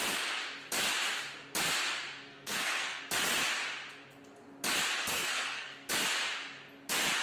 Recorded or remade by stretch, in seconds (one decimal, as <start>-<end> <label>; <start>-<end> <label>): 0.0-2.3 recorded; 2.3-3.0 remade; 3.0-5.0 recorded; 5.0-5.9 remade; 5.9-7.2 recorded